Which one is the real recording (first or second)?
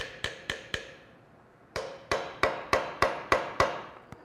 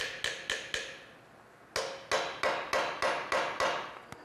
second